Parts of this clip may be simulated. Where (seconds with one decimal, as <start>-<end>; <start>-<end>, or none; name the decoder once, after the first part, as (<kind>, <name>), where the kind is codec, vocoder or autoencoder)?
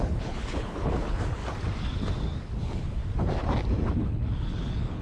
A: 0.0-1.4 (codec, HILCodec); 2.6-3.0; 3.9-5.0